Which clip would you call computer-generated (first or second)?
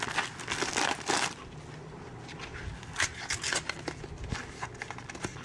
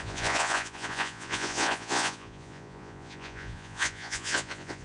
second